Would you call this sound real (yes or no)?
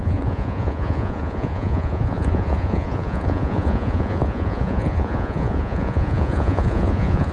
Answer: no